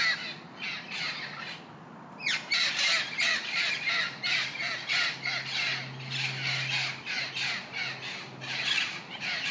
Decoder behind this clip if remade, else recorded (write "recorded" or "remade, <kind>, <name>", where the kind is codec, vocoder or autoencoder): recorded